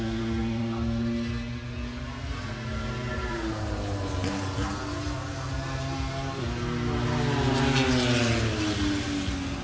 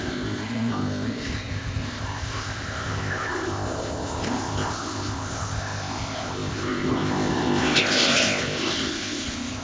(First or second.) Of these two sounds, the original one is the first